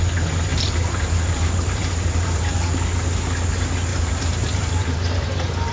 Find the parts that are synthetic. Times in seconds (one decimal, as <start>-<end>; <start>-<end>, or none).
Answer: 0.5-2.4; 3.9-5.3